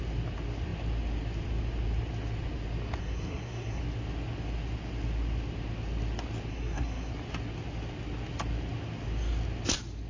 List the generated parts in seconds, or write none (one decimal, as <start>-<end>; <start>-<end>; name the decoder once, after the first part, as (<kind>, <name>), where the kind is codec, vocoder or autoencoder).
3.0-3.8 (codec, SNAC); 6.5-7.1